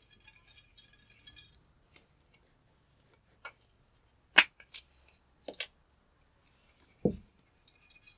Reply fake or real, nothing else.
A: real